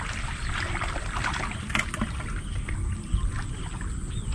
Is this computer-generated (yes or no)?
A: no